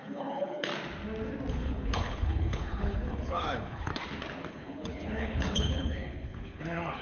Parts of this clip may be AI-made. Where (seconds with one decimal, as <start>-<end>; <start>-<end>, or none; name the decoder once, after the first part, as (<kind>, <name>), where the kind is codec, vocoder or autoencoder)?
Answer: 0.0-0.7 (codec, HILCodec); 1.5-3.9; 4.5-7.0